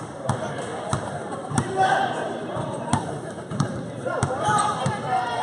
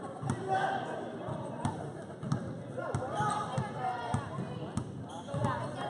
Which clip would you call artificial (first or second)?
first